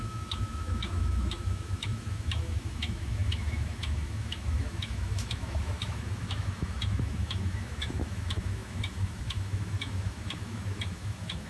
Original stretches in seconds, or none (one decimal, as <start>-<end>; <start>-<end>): none